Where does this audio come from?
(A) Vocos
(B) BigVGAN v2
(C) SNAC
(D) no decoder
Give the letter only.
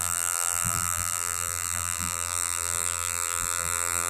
B